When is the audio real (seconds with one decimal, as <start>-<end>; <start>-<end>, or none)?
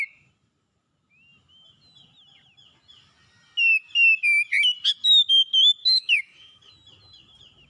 0.0-5.8; 6.7-7.7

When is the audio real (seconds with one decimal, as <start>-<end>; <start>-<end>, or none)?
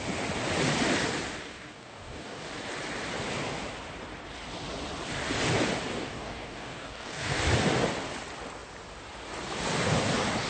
0.0-1.4; 2.5-5.9; 7.4-10.5